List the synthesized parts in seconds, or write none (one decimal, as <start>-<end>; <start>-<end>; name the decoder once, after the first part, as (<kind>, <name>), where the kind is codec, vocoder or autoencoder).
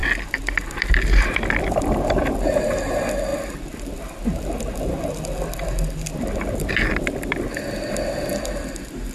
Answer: none